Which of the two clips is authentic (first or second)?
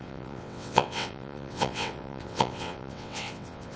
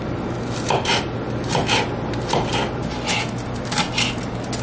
second